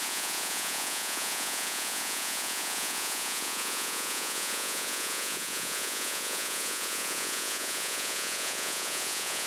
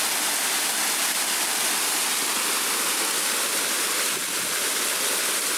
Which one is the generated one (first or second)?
first